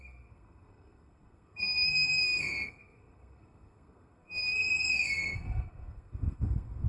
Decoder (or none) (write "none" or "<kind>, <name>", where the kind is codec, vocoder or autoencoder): codec, SNAC